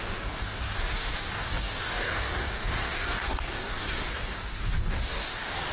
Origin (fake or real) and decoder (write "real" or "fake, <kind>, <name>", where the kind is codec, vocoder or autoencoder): fake, codec, DAC